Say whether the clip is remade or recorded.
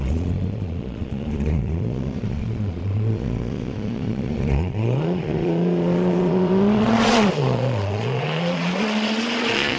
remade